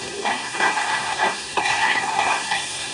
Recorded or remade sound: remade